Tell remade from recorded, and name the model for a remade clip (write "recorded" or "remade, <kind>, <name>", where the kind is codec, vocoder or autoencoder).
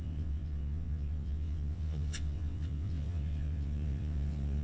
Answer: remade, vocoder, WaveNeXt